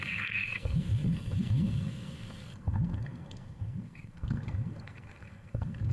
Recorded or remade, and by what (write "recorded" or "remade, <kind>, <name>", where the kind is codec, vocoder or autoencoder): remade, codec, SNAC